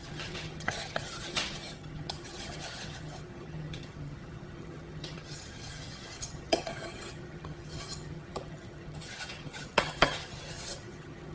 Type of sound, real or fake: fake